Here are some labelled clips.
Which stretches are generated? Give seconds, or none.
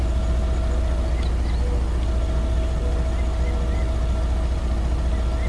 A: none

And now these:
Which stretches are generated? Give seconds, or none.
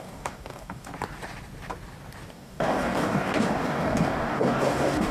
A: 0.0-0.9 (codec, DAC); 2.3-5.1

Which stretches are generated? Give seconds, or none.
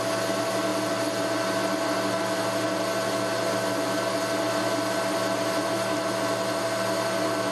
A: none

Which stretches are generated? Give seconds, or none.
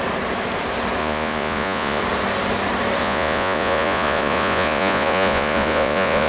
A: 1.0-2.0 (vocoder, Vocos); 3.0-6.3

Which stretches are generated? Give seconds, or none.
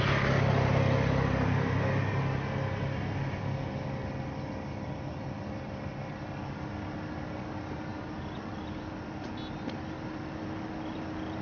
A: none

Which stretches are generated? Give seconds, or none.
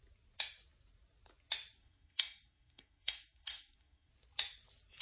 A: 1.8-4.1 (codec, SNAC)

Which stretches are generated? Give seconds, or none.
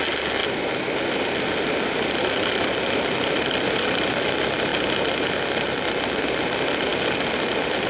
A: none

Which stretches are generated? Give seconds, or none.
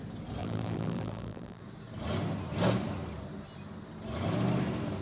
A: 0.4-1.6 (vocoder, BigVGAN v2)